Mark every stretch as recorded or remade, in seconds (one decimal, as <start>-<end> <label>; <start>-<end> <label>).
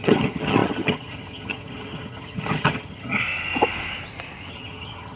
0.0-3.2 remade; 3.2-4.5 recorded; 4.5-5.2 remade